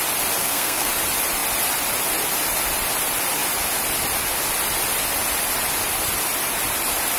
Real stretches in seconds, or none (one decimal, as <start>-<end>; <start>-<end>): 0.0-0.4; 0.9-7.2

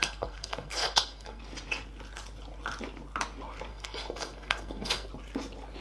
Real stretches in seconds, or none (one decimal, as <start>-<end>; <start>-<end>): 1.4-3.7; 5.1-5.8

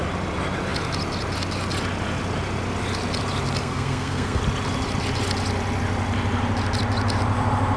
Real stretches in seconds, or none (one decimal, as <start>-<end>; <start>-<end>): 0.0-3.6; 4.4-7.8

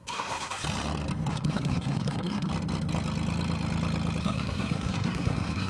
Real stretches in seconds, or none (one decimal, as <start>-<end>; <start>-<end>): 0.6-1.3; 2.5-4.2